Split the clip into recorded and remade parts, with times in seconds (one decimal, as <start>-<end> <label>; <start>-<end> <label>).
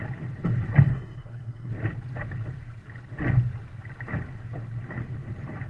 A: 0.0-0.9 recorded; 0.9-1.7 remade; 1.7-5.7 recorded